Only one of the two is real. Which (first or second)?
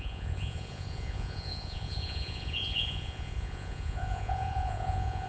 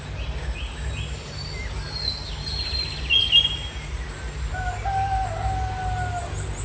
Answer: second